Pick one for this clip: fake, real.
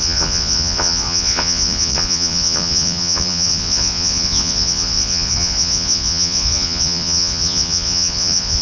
fake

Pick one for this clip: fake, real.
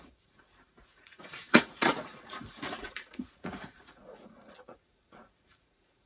fake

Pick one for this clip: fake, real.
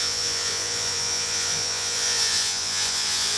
fake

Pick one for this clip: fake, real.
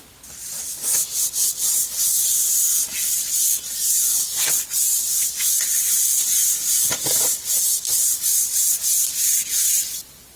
real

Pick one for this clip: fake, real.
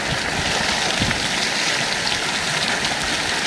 real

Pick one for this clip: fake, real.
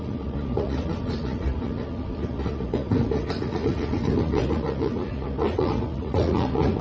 fake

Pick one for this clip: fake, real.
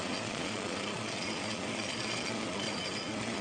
fake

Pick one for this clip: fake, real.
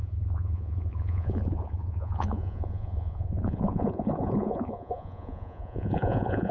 fake